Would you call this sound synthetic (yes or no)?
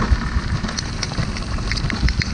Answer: no